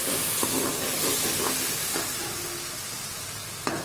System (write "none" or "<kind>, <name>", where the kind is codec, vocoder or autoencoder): none